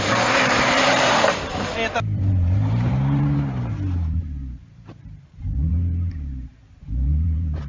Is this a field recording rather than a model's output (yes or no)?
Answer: no